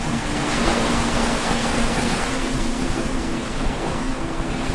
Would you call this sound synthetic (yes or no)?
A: yes